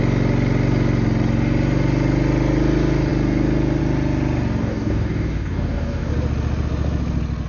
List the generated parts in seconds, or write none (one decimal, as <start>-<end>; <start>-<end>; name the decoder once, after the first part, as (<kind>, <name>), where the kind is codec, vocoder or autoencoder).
4.6-6.1 (codec, DAC)